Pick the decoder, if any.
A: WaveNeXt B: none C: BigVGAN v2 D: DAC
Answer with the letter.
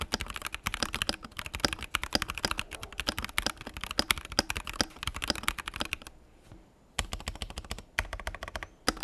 B